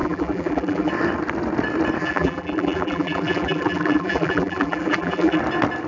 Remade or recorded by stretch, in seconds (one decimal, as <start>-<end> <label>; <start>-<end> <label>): 0.0-0.9 remade; 0.9-2.0 recorded; 2.0-5.4 remade; 5.4-5.9 recorded